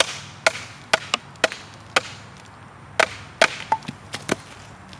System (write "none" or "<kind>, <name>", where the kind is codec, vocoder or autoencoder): none